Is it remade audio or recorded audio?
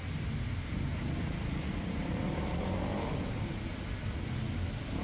recorded